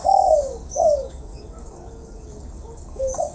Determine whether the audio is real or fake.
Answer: fake